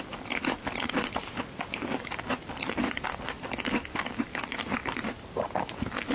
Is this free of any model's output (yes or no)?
yes